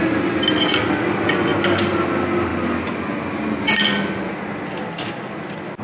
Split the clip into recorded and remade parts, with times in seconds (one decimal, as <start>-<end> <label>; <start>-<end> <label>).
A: 0.0-5.8 recorded